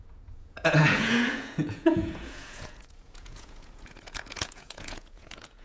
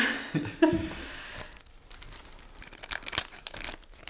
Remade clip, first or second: first